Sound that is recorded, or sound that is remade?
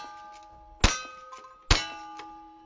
recorded